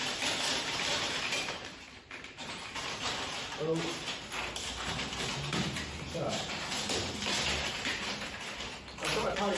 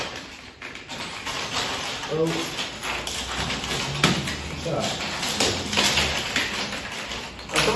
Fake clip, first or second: first